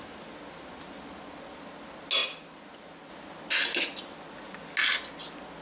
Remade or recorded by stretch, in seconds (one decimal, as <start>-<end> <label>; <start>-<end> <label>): 0.0-5.6 recorded